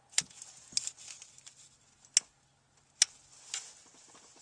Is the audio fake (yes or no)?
no